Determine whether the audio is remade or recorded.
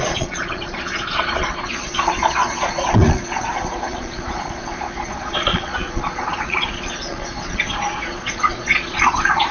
remade